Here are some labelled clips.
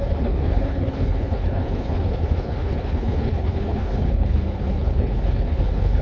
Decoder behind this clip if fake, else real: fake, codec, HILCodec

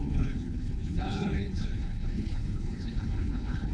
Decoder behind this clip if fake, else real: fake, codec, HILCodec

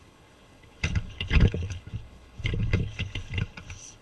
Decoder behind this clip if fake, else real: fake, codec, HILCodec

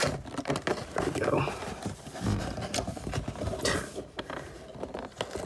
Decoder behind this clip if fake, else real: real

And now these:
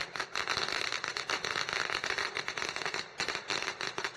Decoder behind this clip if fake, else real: real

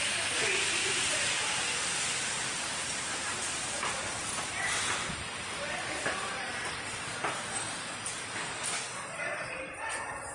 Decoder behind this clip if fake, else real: real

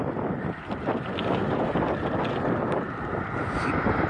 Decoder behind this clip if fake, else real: real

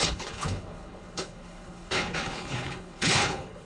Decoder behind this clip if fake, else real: fake, codec, HILCodec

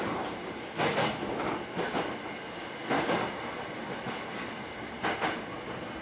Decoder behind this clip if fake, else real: real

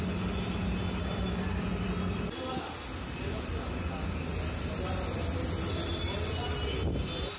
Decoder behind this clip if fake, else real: real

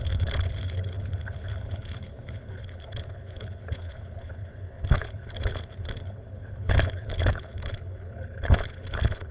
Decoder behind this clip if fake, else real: fake, codec, HILCodec